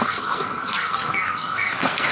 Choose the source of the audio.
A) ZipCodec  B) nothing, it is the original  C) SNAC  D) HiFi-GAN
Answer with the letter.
C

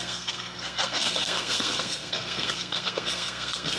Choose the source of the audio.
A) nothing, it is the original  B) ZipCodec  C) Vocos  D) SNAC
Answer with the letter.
D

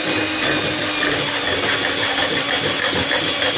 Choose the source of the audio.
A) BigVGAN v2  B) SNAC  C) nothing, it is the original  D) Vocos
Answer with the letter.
C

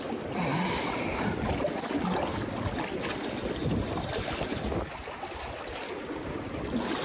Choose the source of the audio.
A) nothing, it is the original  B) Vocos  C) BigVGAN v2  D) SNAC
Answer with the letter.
A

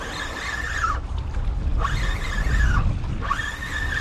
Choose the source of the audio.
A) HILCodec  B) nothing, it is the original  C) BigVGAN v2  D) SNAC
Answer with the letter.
B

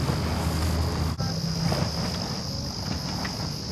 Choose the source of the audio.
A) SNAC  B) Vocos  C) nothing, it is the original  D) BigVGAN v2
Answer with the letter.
C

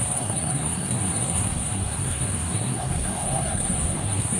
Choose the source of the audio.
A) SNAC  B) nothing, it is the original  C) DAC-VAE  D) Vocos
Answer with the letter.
A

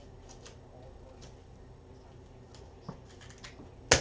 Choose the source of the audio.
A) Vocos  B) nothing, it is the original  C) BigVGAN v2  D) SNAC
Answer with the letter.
B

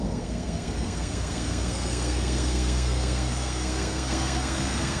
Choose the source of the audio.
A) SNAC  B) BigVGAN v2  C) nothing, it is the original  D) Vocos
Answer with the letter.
A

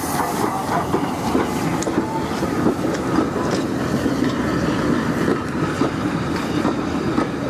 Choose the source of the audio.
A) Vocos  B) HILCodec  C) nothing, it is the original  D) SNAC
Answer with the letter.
C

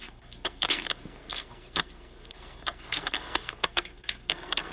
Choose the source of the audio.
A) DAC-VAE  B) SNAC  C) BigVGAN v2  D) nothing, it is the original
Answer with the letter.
B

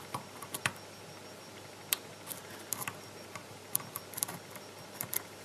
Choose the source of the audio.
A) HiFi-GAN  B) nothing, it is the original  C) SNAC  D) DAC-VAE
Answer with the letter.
B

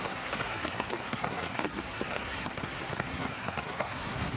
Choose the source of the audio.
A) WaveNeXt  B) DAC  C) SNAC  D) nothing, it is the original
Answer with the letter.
C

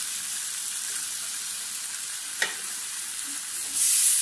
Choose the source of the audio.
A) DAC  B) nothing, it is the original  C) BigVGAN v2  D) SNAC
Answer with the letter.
B